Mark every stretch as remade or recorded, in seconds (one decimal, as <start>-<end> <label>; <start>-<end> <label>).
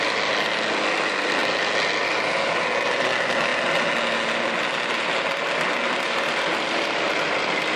0.0-7.8 recorded